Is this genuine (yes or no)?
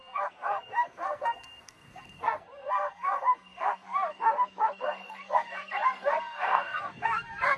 no